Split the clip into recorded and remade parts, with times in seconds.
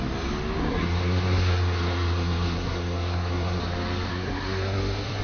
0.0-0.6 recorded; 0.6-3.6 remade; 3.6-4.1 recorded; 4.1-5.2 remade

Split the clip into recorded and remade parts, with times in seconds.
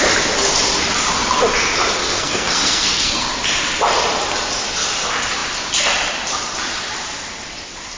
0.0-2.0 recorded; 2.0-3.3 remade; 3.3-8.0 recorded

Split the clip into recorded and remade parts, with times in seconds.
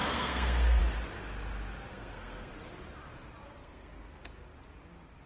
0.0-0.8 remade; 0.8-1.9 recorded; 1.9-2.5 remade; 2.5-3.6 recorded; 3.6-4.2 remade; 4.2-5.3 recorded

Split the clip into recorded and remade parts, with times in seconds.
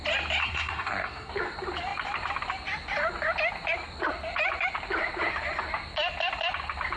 0.0-0.4 recorded; 0.4-1.3 remade; 1.3-7.0 recorded